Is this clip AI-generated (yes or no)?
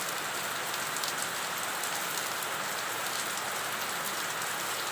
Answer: no